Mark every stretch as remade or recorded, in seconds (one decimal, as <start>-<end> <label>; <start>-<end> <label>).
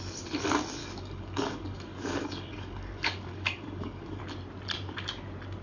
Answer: 0.0-0.8 recorded; 0.8-4.2 remade; 4.2-5.6 recorded